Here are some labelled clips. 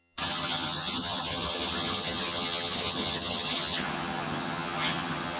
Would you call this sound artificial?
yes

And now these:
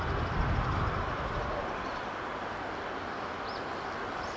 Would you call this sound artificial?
no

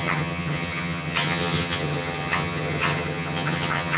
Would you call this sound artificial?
yes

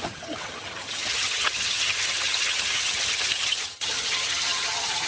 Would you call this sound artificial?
yes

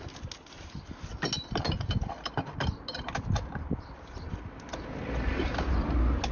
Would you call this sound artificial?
no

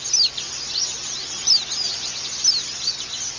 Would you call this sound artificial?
no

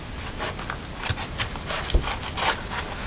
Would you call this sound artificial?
no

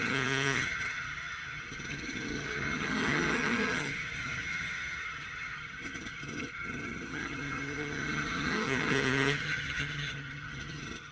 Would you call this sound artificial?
yes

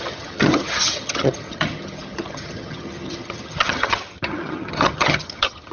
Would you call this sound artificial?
yes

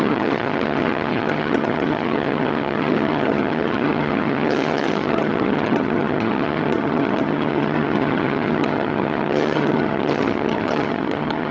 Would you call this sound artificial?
yes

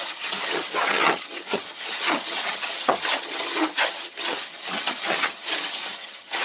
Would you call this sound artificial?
yes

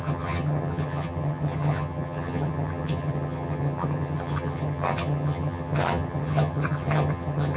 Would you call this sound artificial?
yes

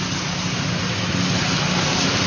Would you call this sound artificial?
no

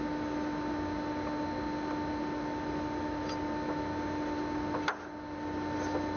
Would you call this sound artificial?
no